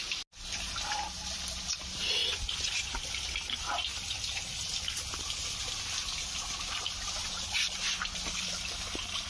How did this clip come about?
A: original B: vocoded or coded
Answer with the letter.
A